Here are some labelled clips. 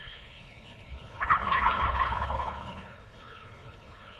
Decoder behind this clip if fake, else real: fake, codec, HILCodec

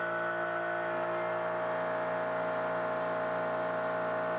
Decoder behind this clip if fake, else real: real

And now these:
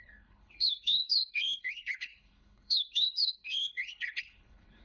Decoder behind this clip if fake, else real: fake, codec, HILCodec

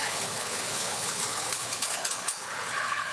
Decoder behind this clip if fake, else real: fake, codec, HILCodec